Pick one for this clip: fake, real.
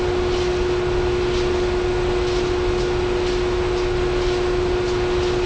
real